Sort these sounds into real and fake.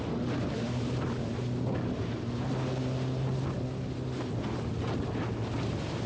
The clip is real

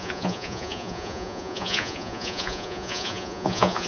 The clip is fake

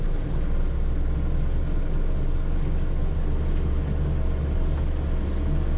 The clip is real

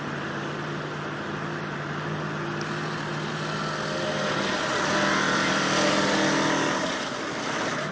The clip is real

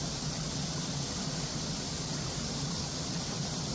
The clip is real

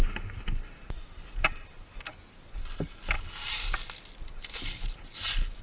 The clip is real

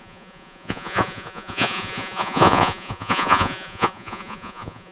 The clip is fake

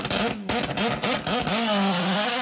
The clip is real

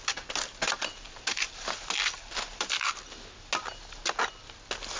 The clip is real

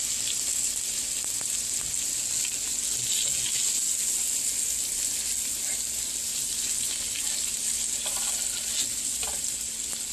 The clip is real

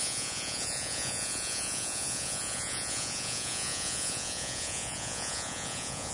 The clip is fake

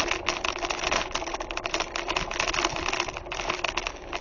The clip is real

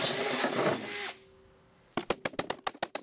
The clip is real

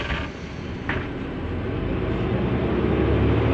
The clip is real